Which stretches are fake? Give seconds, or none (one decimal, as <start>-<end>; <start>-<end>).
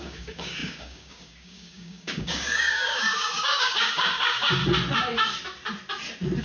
0.0-4.6